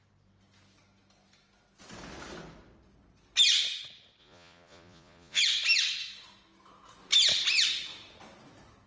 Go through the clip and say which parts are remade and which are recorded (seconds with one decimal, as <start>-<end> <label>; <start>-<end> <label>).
0.0-4.2 recorded; 4.2-5.4 remade; 5.4-8.9 recorded